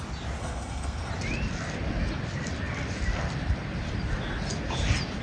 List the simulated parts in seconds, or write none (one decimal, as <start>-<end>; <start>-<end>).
0.4-1.1